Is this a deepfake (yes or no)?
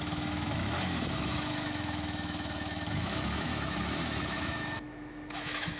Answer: yes